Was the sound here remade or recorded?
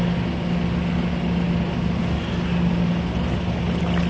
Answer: recorded